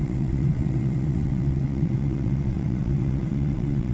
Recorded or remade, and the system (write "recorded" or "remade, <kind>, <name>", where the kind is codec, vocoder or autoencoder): remade, vocoder, WaveNeXt